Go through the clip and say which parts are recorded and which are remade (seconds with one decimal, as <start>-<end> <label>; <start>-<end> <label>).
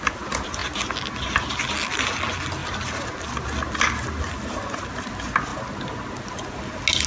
0.0-7.1 recorded